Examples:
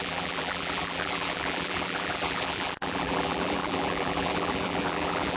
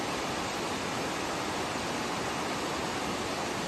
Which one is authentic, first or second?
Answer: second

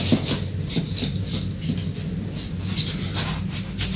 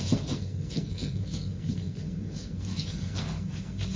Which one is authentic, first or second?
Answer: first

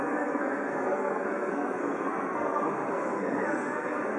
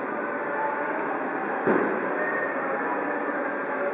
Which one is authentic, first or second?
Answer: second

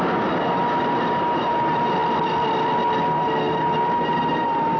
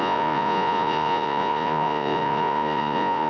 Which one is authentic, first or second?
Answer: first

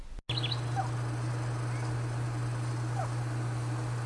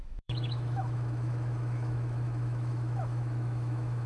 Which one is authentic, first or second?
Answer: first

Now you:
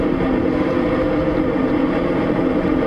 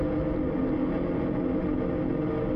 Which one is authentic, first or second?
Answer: second